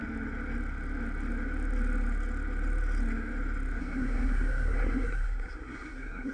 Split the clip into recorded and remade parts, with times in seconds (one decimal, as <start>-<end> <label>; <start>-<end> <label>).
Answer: 0.0-3.8 recorded; 3.8-6.3 remade